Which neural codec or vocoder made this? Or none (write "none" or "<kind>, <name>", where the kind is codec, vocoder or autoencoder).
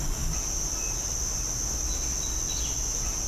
none